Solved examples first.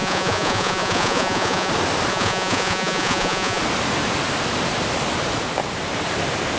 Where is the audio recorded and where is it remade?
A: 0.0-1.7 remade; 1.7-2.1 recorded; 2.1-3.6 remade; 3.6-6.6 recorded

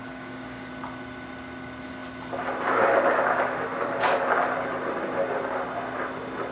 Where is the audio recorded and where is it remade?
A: 0.0-0.7 remade; 0.7-6.5 recorded

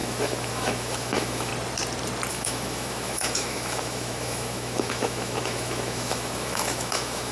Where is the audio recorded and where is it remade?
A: 0.0-1.5 remade; 1.5-2.3 recorded; 2.3-7.3 remade

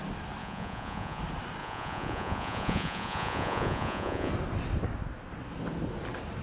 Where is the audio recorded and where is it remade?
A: 0.0-0.4 recorded; 0.4-1.2 remade; 1.2-1.6 recorded; 1.6-4.3 remade; 4.3-6.4 recorded